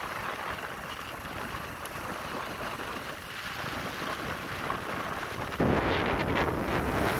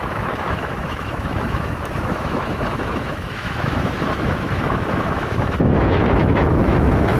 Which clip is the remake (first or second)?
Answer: second